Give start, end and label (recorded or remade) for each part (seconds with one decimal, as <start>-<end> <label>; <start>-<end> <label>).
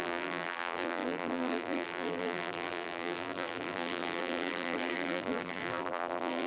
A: 0.0-6.5 remade